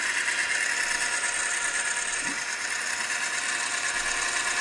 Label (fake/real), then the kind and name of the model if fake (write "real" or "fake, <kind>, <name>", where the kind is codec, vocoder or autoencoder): real